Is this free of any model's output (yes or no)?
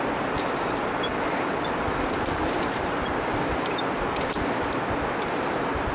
yes